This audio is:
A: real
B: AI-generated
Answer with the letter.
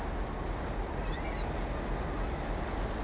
A